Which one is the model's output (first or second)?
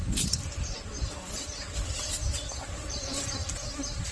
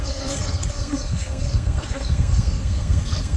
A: second